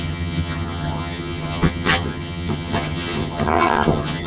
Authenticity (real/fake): fake